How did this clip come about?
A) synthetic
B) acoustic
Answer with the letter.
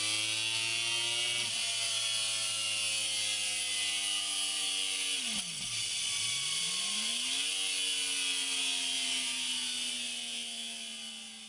B